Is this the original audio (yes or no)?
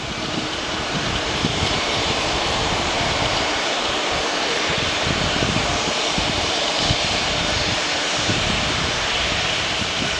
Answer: no